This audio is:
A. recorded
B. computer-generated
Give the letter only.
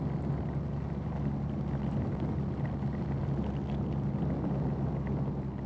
A